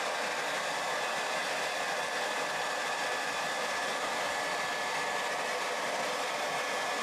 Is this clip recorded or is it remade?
recorded